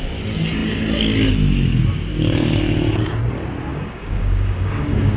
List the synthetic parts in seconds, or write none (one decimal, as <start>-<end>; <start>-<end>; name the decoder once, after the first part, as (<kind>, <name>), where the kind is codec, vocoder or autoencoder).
2.1-2.9 (codec, DAC); 3.7-5.2